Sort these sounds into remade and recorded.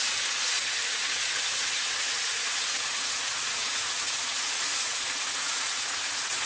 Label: remade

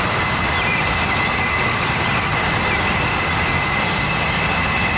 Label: recorded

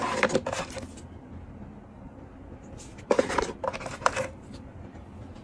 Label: recorded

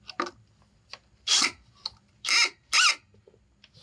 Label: recorded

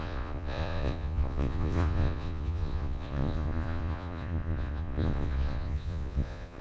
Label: remade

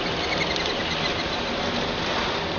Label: remade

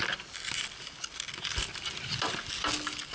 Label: recorded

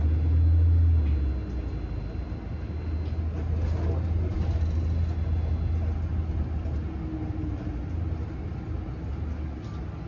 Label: recorded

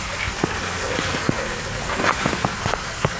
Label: remade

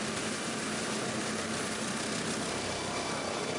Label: recorded